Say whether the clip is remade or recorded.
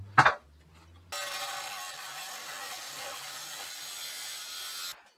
recorded